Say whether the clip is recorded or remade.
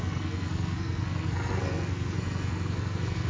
remade